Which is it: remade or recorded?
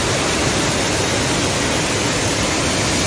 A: recorded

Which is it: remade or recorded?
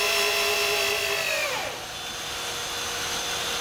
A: recorded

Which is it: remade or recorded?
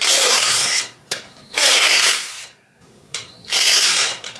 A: remade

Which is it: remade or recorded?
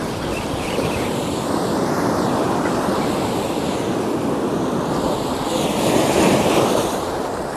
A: recorded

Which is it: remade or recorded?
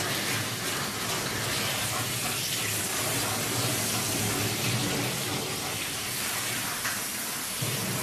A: recorded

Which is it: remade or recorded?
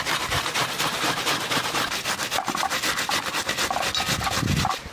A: recorded